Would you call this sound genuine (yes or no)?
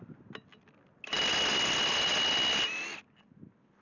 yes